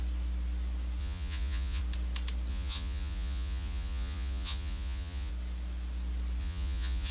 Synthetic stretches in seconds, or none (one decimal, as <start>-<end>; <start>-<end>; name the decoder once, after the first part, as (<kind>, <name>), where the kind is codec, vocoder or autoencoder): 1.0-1.8 (vocoder, Vocos); 2.5-5.3; 6.4-7.1